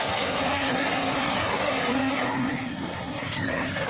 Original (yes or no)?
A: no